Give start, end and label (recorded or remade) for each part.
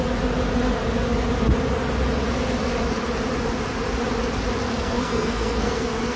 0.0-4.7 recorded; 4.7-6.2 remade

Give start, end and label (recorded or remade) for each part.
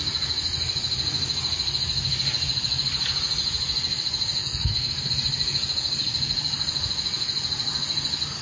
0.0-4.4 recorded; 4.4-5.1 remade; 5.1-8.4 recorded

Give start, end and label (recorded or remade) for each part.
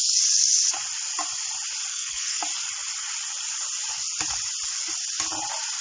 0.0-1.9 recorded; 1.9-2.4 remade; 2.4-5.8 recorded